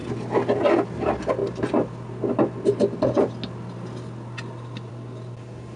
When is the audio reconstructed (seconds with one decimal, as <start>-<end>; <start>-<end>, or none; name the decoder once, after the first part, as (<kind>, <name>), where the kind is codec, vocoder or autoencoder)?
none